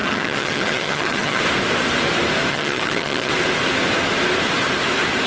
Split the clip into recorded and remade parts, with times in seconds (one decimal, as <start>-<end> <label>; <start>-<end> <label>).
0.0-1.4 remade; 1.4-2.5 recorded; 2.5-3.3 remade; 3.3-5.3 recorded